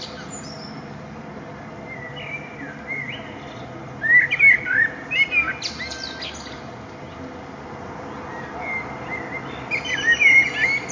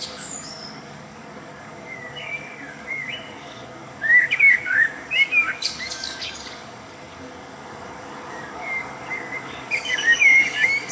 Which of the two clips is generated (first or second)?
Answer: second